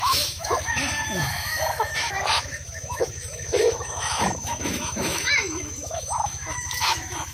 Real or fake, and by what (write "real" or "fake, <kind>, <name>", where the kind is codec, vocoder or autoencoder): fake, autoencoder, DAC-VAE